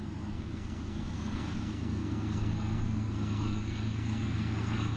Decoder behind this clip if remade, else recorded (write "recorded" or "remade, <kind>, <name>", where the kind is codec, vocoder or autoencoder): remade, codec, SNAC